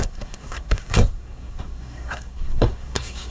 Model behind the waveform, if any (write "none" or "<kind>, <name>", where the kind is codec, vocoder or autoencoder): codec, SNAC